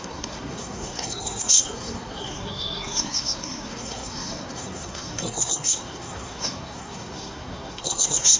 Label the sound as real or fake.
fake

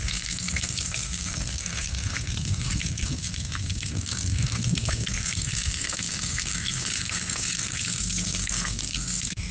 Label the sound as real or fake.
fake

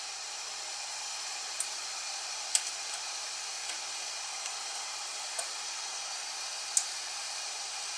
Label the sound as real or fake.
real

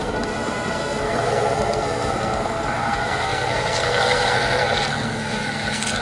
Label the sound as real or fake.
fake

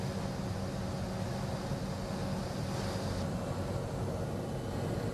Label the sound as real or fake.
real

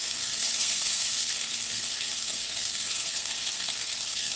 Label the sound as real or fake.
fake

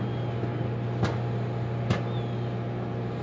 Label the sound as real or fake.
real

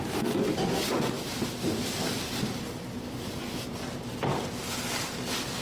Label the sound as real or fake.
real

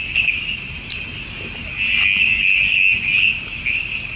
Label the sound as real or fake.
real